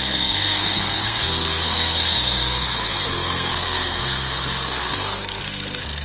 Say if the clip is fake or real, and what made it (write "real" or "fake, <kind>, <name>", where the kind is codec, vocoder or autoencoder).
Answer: fake, codec, SNAC